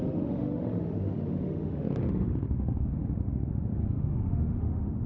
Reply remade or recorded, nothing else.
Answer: remade